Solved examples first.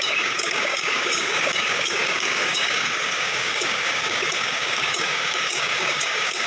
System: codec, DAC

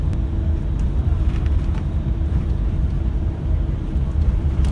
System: vocoder, BigVGAN v2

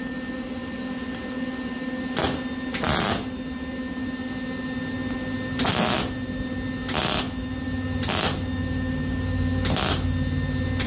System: none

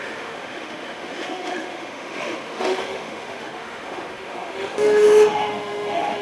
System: autoencoder, DAC-VAE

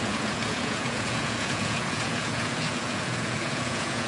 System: vocoder, Vocos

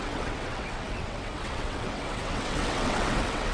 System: vocoder, WaveNeXt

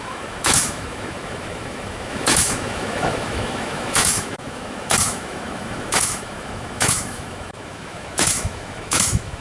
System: autoencoder, DAC-VAE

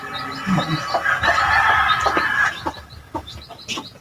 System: none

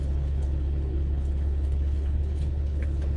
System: codec, HILCodec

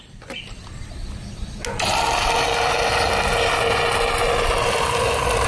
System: none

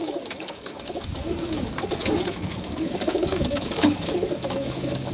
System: codec, DAC